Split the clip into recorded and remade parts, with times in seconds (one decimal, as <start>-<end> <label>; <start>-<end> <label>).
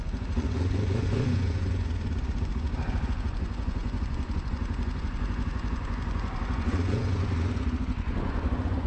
0.0-8.9 remade